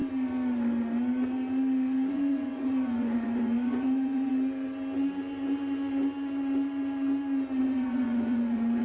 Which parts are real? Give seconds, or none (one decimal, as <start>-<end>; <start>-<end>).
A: 0.0-2.1; 4.3-7.6